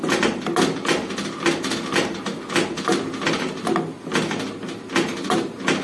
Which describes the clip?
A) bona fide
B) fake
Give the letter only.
A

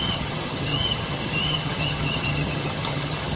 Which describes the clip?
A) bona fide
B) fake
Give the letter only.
B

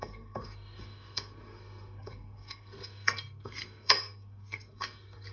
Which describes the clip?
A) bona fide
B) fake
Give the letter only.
B